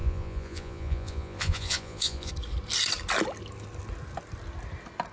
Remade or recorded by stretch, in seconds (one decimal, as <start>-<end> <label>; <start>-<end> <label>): 0.0-2.3 remade; 2.3-5.1 recorded